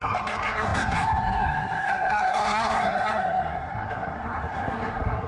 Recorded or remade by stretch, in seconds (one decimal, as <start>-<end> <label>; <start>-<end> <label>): 0.0-5.3 remade